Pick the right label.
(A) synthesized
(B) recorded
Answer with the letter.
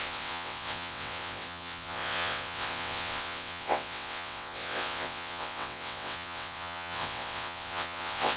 A